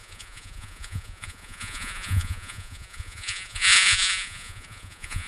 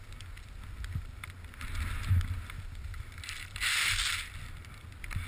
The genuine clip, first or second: second